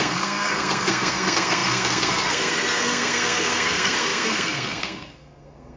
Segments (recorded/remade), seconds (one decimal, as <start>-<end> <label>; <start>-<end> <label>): 0.0-5.8 remade